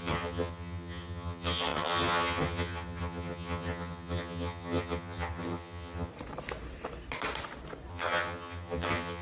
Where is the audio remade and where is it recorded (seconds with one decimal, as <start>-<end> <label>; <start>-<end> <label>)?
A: 0.0-6.1 remade; 6.1-7.9 recorded; 7.9-9.2 remade